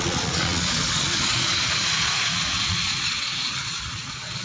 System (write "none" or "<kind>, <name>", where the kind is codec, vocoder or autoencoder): vocoder, Vocos